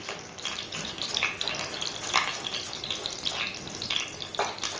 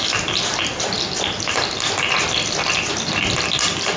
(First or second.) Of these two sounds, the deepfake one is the second